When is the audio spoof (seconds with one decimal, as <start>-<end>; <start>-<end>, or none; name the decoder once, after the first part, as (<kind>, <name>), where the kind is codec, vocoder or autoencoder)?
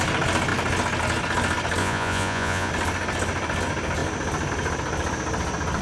1.8-2.7 (vocoder, Vocos)